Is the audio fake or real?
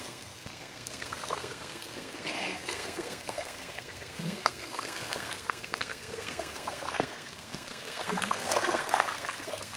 fake